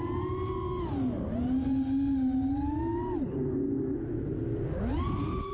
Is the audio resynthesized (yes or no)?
no